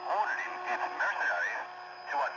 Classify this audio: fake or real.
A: real